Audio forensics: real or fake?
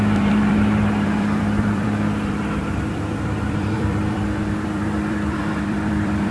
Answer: fake